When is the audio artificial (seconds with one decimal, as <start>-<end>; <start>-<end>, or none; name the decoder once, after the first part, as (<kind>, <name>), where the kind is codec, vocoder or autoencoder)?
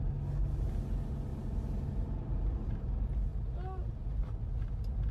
1.3-2.8 (vocoder, BigVGAN v2)